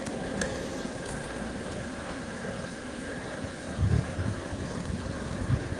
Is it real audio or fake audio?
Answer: fake